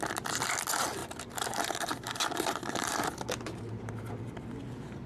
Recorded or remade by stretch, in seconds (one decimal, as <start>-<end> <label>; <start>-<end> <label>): 0.0-5.1 recorded